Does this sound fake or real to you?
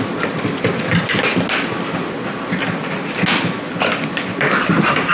real